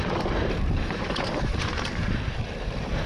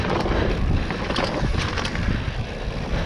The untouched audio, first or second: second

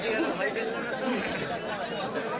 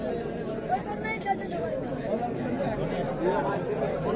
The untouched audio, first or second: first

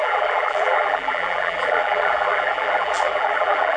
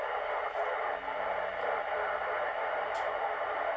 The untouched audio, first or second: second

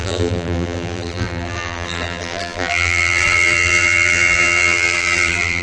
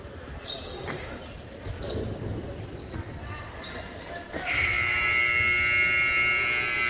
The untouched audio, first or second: second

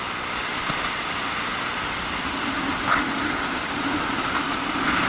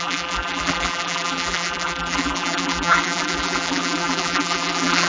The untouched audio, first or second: first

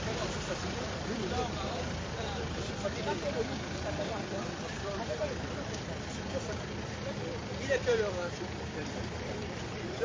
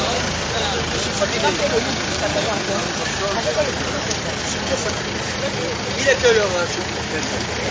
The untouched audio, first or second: second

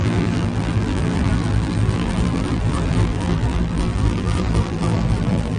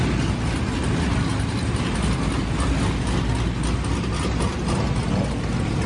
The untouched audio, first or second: second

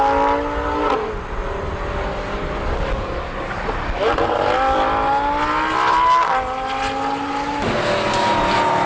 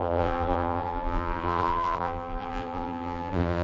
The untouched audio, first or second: first